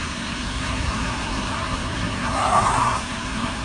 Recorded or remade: remade